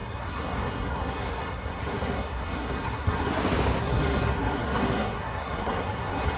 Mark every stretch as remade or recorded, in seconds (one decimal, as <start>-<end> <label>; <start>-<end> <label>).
0.0-3.3 remade; 3.3-3.8 recorded; 3.8-6.4 remade